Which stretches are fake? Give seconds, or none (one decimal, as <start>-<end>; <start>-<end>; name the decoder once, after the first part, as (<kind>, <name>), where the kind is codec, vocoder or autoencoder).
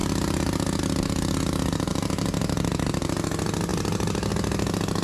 none